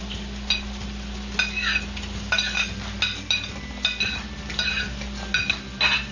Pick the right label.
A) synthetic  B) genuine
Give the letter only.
B